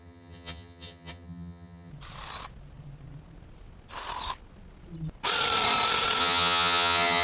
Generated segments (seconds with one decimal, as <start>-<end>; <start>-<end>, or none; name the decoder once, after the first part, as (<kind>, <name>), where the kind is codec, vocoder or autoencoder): 0.0-1.9 (vocoder, HiFi-GAN); 6.2-7.2